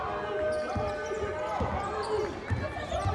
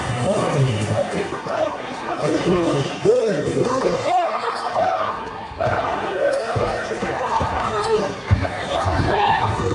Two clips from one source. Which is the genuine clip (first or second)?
first